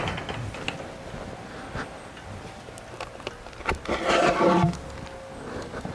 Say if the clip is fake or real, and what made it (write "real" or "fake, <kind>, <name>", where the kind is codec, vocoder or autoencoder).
real